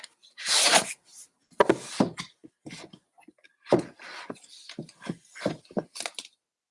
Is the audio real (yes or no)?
yes